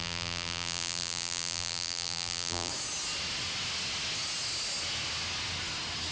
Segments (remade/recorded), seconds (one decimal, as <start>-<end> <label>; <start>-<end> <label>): 0.0-2.7 remade; 2.7-6.1 recorded